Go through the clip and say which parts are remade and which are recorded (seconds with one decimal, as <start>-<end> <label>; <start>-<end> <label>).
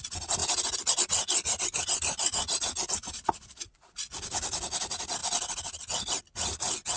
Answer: 0.0-3.0 recorded; 3.0-4.0 remade; 4.0-7.0 recorded